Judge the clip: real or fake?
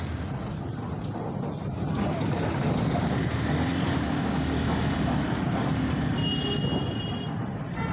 real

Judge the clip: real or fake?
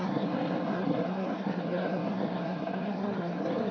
fake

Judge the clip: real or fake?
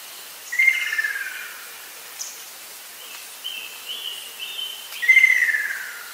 real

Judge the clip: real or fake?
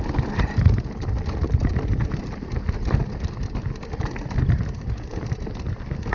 real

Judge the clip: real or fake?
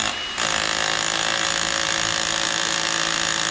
real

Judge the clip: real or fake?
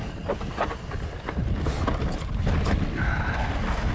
real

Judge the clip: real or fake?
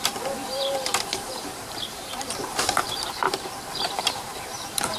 fake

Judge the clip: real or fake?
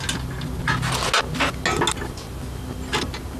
real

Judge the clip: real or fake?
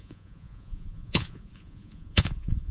fake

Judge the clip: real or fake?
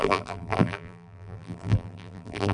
fake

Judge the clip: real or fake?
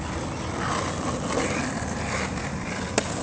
real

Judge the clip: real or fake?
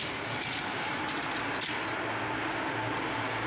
real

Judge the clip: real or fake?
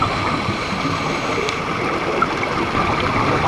real